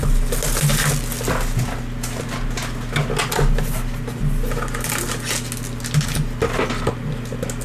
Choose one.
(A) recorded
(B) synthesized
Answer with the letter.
A